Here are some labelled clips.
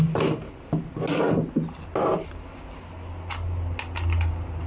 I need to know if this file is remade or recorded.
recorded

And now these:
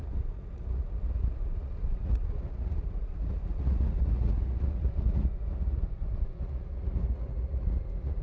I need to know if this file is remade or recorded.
remade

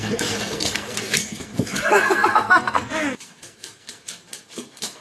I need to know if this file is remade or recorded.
remade